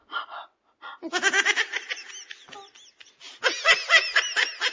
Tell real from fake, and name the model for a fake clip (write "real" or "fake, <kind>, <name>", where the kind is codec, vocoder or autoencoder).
real